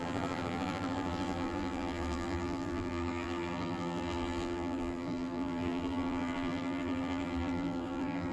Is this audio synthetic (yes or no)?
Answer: yes